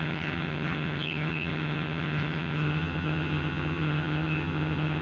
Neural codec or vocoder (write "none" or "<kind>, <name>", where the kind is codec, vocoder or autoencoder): vocoder, HiFi-GAN